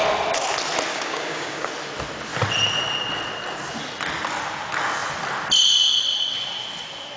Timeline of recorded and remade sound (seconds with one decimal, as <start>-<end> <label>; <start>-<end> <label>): 0.0-0.9 recorded; 0.9-1.7 remade; 1.7-7.2 recorded